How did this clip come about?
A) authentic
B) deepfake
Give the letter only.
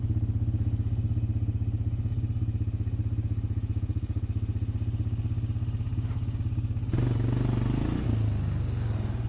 A